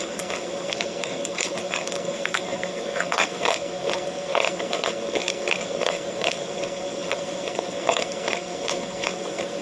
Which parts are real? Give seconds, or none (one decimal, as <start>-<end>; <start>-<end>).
none